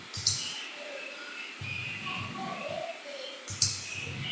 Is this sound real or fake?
real